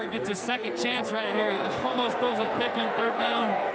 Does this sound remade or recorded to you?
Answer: remade